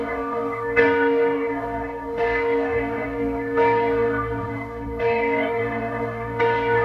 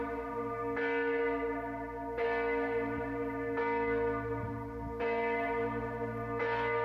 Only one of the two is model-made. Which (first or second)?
first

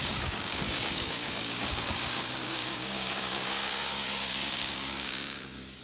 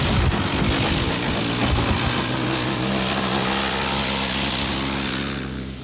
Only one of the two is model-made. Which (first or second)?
first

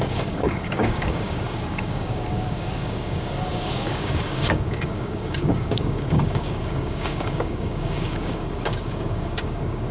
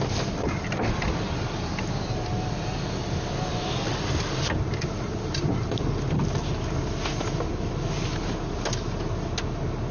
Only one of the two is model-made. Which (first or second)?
first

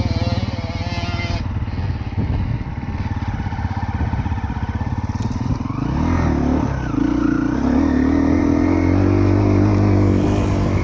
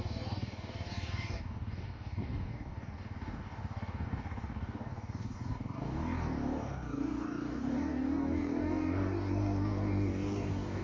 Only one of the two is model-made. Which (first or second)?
second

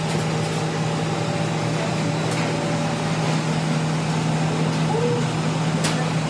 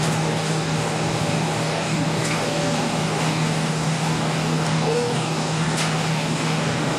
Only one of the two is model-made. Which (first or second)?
second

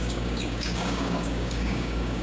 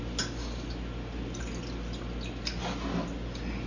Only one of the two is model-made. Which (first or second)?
first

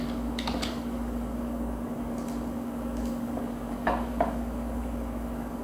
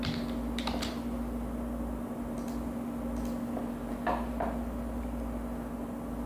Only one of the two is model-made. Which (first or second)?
first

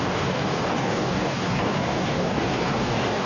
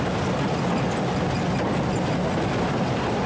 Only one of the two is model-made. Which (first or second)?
first